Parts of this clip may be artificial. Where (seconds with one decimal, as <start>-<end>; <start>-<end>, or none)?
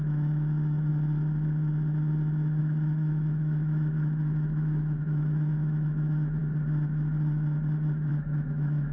0.0-0.9; 2.6-6.4; 8.1-8.9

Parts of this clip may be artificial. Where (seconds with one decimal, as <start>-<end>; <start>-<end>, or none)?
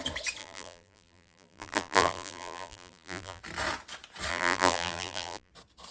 0.4-3.4; 4.3-5.5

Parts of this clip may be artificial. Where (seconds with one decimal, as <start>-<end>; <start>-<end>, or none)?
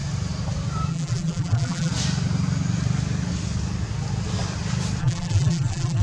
0.9-1.9; 5.0-6.0